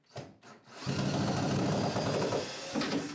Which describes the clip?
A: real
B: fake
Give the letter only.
A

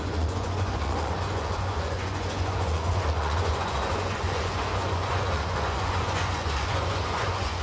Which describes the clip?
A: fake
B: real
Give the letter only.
A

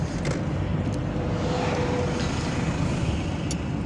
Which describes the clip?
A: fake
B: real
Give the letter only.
B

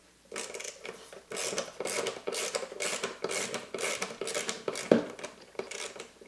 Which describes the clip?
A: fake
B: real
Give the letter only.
A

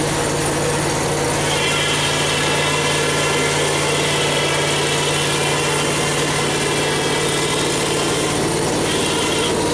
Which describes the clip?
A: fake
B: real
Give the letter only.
B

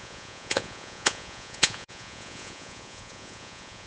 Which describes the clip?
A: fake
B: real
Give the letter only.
A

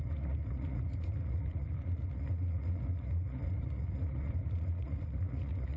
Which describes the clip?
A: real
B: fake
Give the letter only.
B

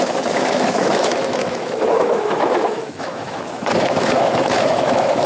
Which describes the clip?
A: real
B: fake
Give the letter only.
B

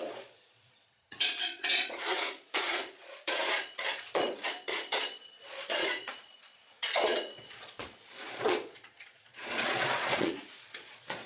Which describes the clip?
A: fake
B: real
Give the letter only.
A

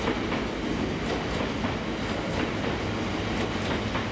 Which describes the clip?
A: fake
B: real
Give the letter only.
B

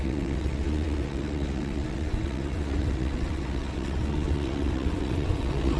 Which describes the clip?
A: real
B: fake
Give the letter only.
B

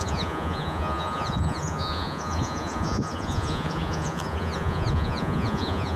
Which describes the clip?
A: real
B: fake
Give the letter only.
B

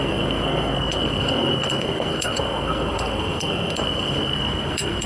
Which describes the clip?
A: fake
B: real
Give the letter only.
A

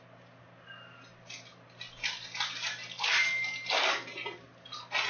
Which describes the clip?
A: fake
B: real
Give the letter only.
B